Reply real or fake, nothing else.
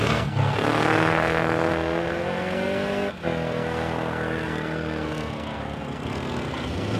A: fake